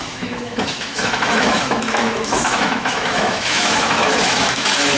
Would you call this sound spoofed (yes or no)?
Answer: yes